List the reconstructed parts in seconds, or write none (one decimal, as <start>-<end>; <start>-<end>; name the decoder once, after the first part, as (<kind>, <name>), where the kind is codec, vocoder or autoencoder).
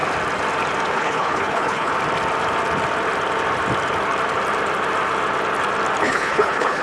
0.9-1.9 (codec, HILCodec); 6.0-6.8